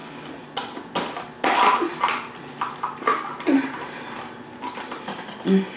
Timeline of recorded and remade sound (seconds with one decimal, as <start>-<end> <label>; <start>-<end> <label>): 0.0-5.8 recorded